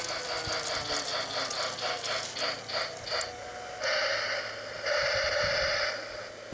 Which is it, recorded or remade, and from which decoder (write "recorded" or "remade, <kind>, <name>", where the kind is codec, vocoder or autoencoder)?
recorded